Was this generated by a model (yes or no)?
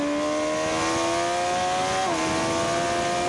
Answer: no